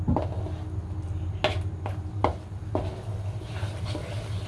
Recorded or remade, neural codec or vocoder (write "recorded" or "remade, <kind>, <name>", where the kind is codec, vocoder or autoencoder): recorded